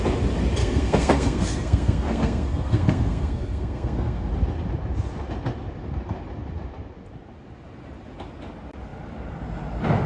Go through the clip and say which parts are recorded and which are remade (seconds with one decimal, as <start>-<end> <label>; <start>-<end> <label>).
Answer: 0.0-0.6 recorded; 0.6-4.3 remade; 4.3-10.1 recorded

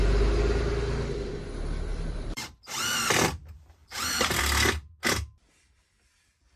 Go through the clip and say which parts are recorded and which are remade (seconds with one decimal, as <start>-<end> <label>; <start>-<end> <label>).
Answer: 0.0-1.9 recorded; 1.9-2.4 remade; 2.4-3.8 recorded; 3.8-4.4 remade; 4.4-6.6 recorded

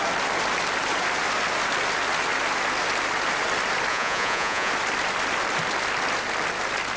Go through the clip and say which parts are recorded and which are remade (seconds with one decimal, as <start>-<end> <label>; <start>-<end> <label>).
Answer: 0.0-3.9 recorded; 3.9-4.7 remade; 4.7-7.0 recorded

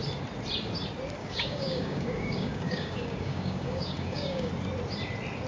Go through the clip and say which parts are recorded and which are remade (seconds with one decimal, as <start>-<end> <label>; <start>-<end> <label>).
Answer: 0.0-1.2 recorded; 1.2-4.5 remade; 4.5-5.5 recorded